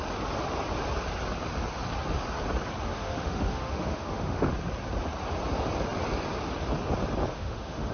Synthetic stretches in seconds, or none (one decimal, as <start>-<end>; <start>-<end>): 2.9-4.5; 7.3-7.9